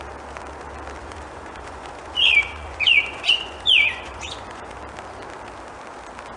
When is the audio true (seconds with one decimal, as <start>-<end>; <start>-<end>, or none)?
0.0-1.0; 4.8-6.4